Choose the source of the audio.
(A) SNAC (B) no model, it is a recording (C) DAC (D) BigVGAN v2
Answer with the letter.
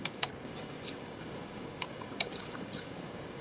C